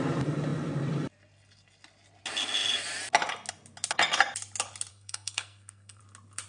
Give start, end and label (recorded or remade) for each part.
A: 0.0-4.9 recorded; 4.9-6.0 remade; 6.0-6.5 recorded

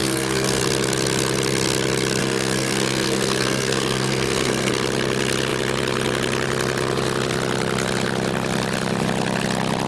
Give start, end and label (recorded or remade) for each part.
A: 0.0-0.6 remade; 0.6-2.2 recorded; 2.2-4.7 remade; 4.7-9.9 recorded